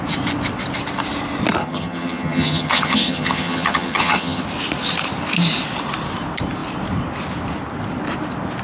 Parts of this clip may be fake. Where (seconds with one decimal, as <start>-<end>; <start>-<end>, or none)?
1.6-4.4